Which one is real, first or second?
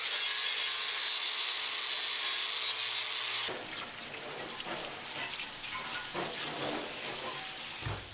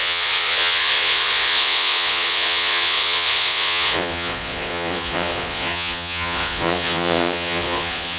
first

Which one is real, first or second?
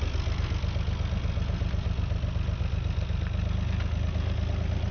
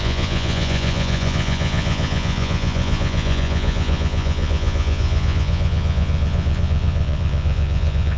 first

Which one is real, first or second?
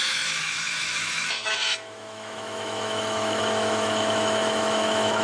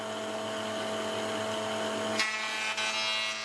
second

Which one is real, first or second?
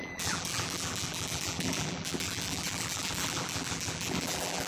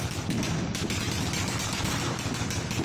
second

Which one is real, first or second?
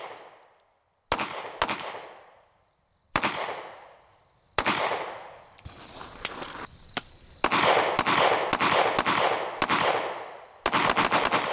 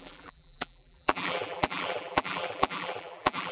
first